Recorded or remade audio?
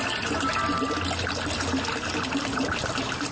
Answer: recorded